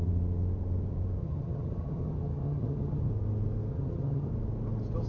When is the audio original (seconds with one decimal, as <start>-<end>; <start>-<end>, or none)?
0.0-1.2; 3.1-3.7; 4.3-5.1